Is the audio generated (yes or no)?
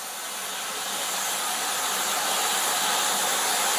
no